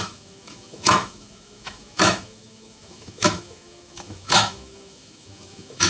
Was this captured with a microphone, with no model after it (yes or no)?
no